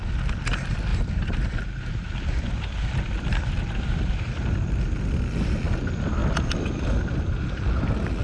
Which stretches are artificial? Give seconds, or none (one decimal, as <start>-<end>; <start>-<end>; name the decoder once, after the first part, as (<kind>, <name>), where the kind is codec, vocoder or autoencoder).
0.9-4.1 (vocoder, BigVGAN v2)